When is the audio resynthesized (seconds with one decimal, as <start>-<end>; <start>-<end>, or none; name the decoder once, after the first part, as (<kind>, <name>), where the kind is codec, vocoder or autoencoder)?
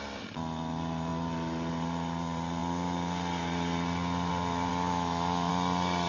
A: 4.7-5.5 (autoencoder, DAC-VAE)